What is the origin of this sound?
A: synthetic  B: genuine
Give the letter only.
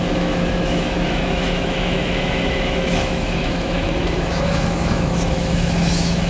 A